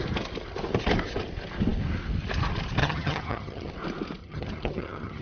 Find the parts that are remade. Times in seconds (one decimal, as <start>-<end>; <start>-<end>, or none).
2.8-3.7; 4.2-5.2